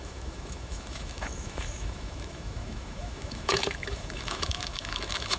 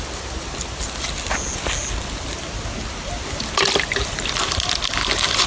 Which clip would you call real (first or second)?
second